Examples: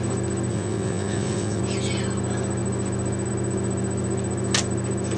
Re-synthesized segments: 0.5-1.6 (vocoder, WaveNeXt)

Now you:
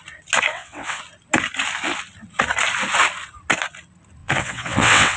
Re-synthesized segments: 0.5-1.0 (vocoder, WaveNeXt); 4.2-5.2

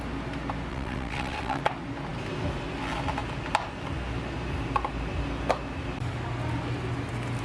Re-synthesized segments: 0.7-1.6 (vocoder, WaveNeXt)

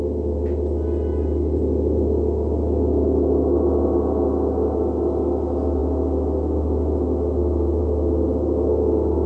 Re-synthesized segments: none

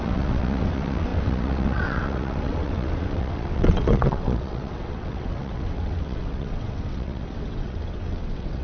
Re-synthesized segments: 0.0-8.6 (vocoder, WaveNeXt)

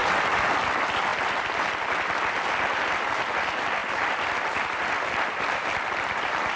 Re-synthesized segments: none